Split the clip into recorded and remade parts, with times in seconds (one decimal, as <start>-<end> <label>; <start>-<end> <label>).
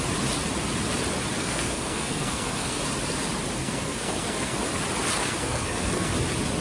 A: 0.0-1.4 recorded; 1.4-2.8 remade; 2.8-3.6 recorded; 3.6-4.6 remade; 4.6-5.2 recorded; 5.2-6.1 remade; 6.1-6.6 recorded